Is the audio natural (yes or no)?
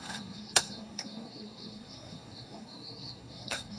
no